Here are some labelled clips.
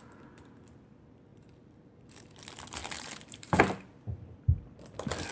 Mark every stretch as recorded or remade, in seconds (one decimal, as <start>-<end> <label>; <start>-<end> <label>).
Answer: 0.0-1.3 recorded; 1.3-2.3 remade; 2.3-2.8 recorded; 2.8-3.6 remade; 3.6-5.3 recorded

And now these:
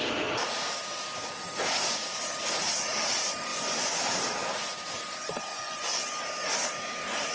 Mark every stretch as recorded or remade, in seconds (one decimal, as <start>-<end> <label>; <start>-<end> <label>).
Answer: 0.0-3.5 recorded; 3.5-4.0 remade; 4.0-5.5 recorded; 5.5-6.2 remade; 6.2-7.3 recorded

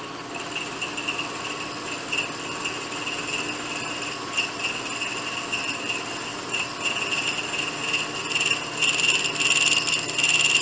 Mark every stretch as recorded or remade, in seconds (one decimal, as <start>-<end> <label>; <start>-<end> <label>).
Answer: 0.0-10.6 recorded

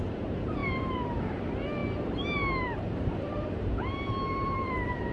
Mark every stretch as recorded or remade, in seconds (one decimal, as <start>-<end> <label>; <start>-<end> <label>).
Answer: 0.0-5.1 remade

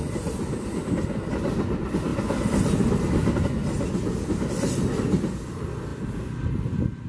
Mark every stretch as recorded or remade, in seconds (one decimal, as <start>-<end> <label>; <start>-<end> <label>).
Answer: 0.0-7.1 recorded